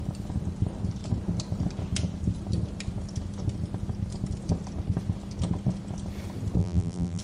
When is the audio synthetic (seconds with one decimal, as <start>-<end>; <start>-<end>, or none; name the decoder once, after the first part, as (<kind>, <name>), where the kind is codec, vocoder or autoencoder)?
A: 6.6-7.2 (vocoder, BigVGAN v2)